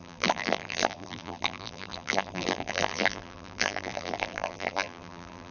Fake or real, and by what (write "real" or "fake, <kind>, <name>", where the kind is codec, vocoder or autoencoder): fake, vocoder, BigVGAN v2